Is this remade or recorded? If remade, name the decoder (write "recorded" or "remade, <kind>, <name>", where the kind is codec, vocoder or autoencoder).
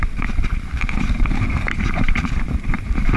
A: remade, vocoder, BigVGAN v2